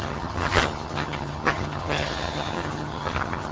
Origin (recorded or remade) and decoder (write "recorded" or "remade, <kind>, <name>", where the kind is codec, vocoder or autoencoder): remade, vocoder, HiFi-GAN